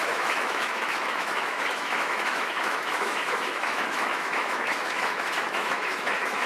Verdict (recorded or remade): remade